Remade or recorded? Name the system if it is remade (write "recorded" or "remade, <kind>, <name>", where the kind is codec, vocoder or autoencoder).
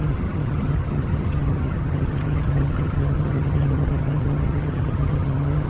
remade, vocoder, HiFi-GAN